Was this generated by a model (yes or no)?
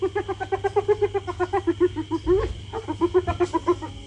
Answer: no